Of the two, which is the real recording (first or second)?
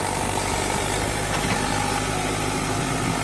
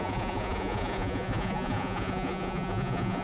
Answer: first